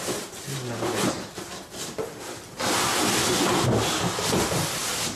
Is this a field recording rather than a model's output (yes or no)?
yes